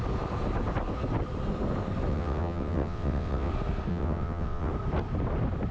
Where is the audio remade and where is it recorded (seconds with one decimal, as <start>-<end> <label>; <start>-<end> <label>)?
0.0-2.1 recorded; 2.1-3.5 remade; 3.5-3.9 recorded; 3.9-4.7 remade; 4.7-5.7 recorded